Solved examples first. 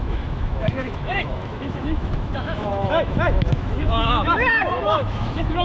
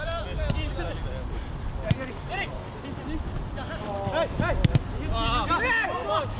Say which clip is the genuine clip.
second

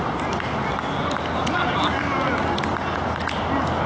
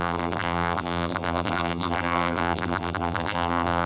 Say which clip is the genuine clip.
first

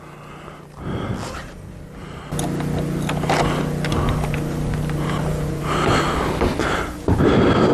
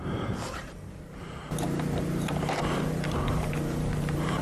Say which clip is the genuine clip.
first